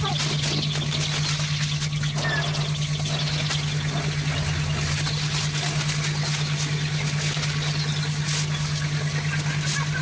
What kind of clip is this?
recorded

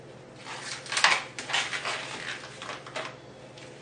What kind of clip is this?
recorded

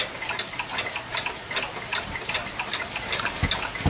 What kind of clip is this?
recorded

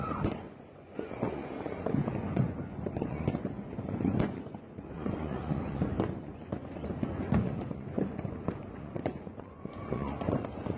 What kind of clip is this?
remade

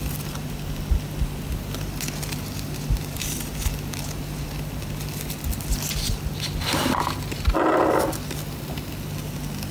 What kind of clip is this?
recorded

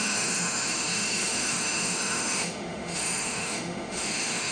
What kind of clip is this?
remade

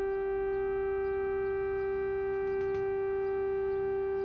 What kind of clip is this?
recorded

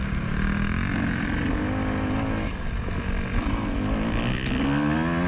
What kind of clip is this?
recorded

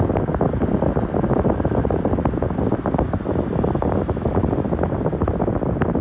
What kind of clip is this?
recorded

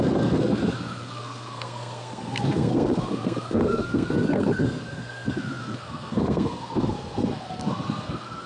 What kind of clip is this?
remade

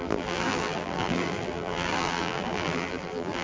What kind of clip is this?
remade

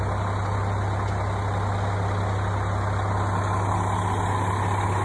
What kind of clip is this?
recorded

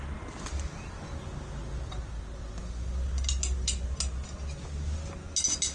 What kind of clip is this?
recorded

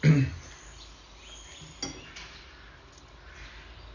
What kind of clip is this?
recorded